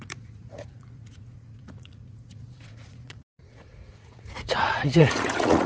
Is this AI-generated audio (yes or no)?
yes